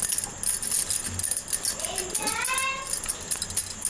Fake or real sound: real